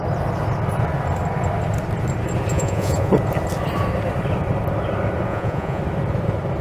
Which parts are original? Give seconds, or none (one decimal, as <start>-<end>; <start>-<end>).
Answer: 0.0-2.5; 3.1-5.3; 5.8-6.6